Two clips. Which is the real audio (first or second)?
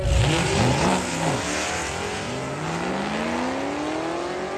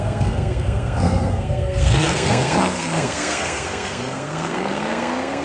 first